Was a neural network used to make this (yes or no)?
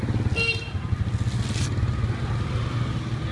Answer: no